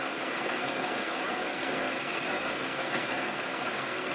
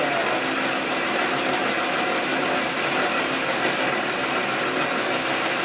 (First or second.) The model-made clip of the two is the first